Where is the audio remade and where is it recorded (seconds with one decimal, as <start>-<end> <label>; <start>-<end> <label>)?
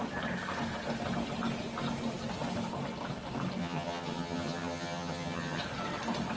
0.0-3.6 recorded; 3.6-5.6 remade; 5.6-6.4 recorded